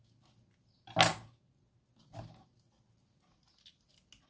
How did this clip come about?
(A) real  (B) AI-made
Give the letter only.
A